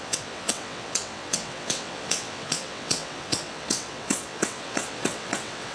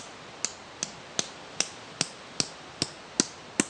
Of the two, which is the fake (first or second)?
first